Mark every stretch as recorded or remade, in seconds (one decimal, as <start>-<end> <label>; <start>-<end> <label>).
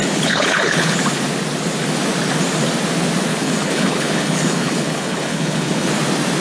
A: 0.0-1.0 remade; 1.0-3.3 recorded; 3.3-5.9 remade; 5.9-6.4 recorded